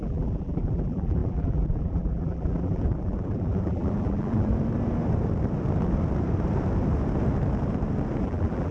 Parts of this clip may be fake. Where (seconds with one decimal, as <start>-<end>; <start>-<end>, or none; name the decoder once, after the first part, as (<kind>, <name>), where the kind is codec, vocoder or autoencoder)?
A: 0.0-4.5 (vocoder, BigVGAN v2); 8.2-8.7